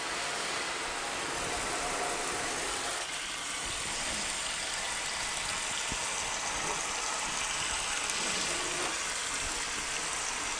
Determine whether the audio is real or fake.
real